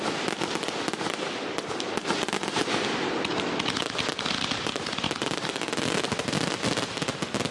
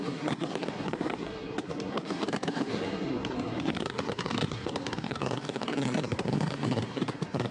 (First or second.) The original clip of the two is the first